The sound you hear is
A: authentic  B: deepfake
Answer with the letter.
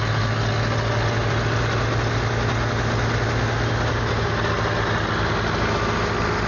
A